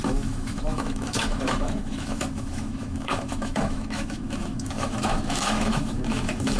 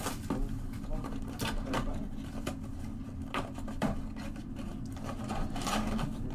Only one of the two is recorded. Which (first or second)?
second